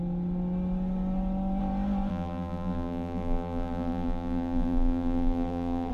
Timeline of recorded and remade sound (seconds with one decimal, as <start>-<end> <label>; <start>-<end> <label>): 0.0-2.1 recorded; 2.1-5.9 remade